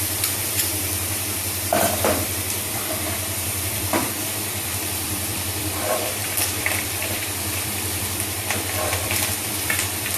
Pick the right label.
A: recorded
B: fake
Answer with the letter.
B